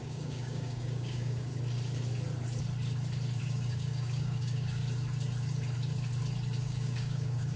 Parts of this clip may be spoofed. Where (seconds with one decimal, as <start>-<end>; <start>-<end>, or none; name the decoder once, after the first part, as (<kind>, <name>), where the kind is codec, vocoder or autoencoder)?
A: 0.0-1.5 (codec, DAC); 3.4-4.8; 6.6-7.6